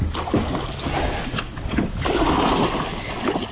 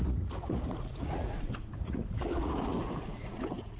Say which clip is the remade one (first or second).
second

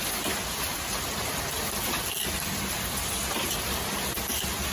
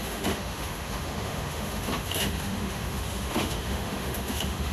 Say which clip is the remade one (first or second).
second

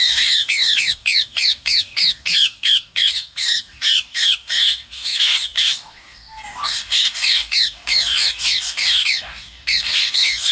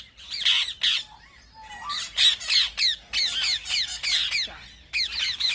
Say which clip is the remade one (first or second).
first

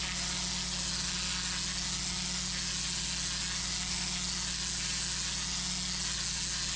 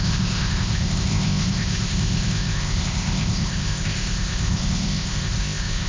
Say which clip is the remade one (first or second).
second